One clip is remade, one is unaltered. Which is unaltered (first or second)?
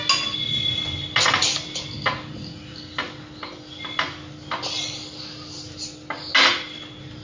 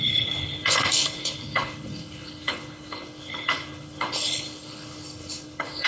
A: first